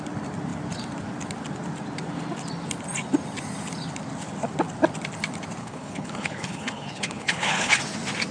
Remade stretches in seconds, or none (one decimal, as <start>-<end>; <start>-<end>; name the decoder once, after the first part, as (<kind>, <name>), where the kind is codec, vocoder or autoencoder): 5.6-7.8 (codec, HILCodec)